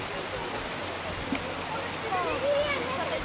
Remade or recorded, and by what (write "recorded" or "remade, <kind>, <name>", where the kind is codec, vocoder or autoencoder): recorded